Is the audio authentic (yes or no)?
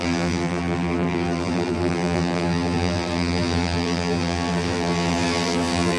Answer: no